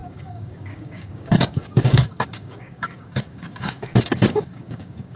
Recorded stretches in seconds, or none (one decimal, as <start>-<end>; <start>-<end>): none